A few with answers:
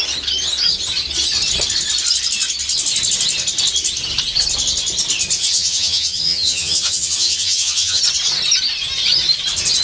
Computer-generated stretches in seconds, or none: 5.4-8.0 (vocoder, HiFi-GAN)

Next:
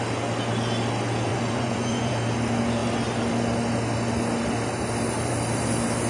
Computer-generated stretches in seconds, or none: 1.3-2.1 (vocoder, Vocos)

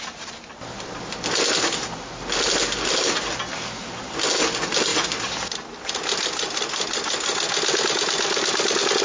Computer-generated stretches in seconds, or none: none